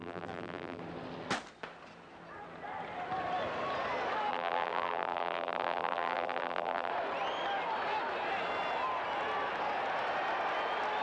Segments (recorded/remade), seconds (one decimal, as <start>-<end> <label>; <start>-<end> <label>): 0.0-0.8 remade; 0.8-4.3 recorded; 4.3-6.9 remade; 6.9-11.0 recorded